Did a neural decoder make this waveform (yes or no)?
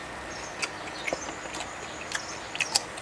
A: no